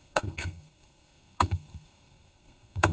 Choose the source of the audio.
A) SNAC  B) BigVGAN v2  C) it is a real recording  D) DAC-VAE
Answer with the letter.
A